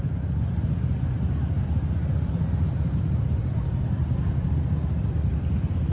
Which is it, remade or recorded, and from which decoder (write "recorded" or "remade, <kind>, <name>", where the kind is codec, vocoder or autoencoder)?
recorded